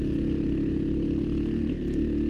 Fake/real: real